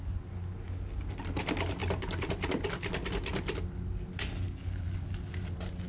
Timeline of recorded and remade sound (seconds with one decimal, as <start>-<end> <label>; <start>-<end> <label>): 0.0-5.9 recorded